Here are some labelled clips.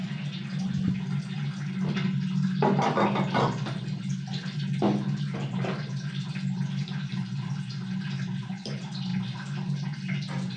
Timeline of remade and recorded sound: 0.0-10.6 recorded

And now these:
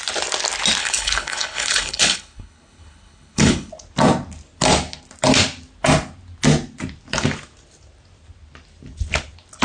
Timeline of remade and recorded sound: 0.0-0.8 recorded; 0.8-3.7 remade; 3.7-9.6 recorded

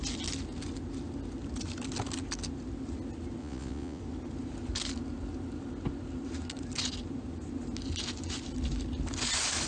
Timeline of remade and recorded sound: 0.0-3.4 recorded; 3.4-4.0 remade; 4.0-9.7 recorded

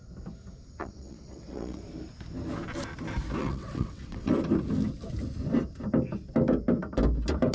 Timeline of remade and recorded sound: 0.0-0.8 recorded; 0.8-1.8 remade; 1.8-3.4 recorded; 3.4-4.3 remade; 4.3-7.5 recorded

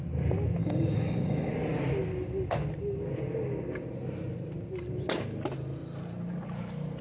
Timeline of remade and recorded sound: 0.0-0.6 recorded; 0.6-1.5 remade; 1.5-7.0 recorded